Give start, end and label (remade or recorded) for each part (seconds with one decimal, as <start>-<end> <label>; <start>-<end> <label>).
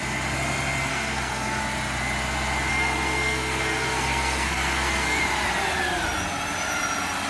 0.0-0.9 recorded; 0.9-1.6 remade; 1.6-2.7 recorded; 2.7-5.2 remade; 5.2-7.3 recorded